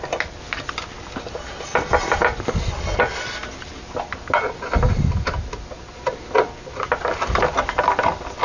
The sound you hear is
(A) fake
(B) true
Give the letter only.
B